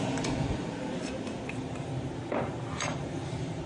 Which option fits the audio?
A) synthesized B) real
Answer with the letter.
A